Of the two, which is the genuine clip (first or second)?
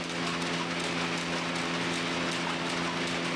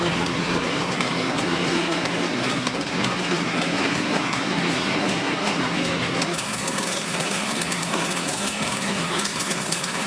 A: first